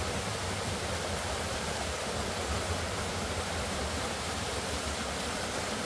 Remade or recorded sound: recorded